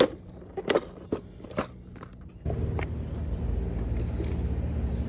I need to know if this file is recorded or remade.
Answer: recorded